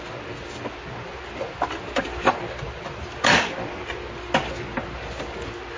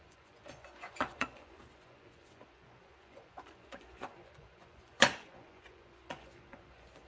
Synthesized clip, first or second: second